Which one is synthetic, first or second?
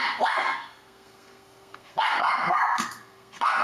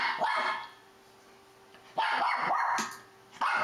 first